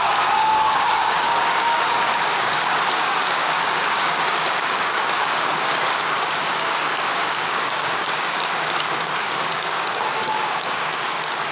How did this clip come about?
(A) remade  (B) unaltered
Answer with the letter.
A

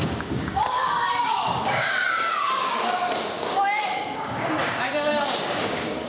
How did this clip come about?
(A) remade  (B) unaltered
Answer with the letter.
A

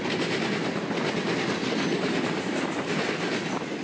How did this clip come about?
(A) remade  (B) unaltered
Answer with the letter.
B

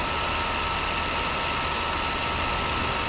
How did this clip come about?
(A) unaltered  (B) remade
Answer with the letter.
A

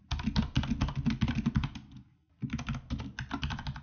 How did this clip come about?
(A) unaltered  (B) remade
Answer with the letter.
A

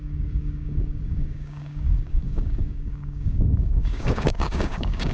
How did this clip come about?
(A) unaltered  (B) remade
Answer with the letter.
B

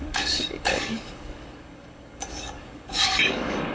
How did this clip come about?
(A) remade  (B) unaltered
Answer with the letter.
A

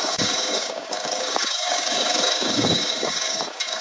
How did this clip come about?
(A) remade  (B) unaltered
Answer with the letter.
A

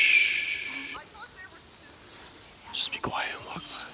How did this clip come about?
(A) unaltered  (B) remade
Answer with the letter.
A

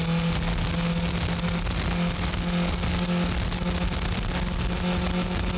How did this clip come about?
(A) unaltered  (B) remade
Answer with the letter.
A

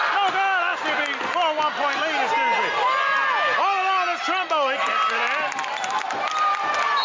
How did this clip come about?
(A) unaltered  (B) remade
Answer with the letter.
A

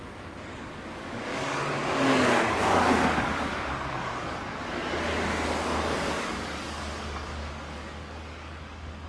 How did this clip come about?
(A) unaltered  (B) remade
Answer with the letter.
B